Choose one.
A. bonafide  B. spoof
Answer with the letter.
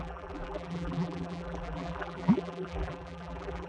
B